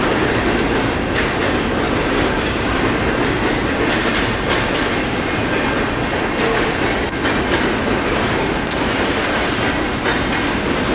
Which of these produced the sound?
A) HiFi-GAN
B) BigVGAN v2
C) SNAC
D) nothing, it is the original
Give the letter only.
D